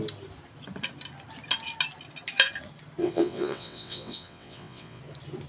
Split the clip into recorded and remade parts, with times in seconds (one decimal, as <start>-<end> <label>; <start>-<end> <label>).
0.0-3.0 recorded; 3.0-5.0 remade; 5.0-5.5 recorded